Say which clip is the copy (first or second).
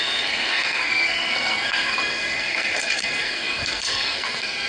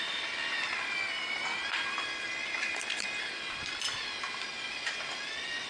first